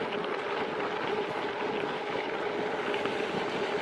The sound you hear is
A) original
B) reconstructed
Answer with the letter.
A